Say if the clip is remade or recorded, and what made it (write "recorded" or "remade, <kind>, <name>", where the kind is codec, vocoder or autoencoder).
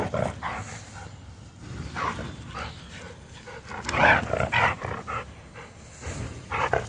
recorded